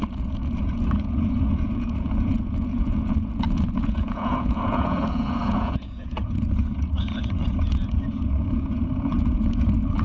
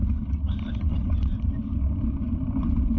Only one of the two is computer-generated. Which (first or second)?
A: first